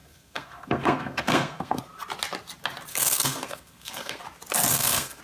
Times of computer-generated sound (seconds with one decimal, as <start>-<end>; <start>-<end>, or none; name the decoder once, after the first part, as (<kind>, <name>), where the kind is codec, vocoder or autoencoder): 0.0-1.8 (codec, SNAC); 2.9-4.2; 4.7-5.2